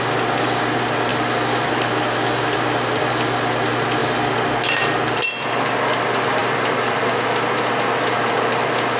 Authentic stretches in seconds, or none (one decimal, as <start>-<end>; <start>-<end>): 0.0-1.1; 3.2-6.4; 7.0-9.0